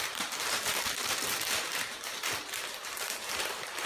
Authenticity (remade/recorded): remade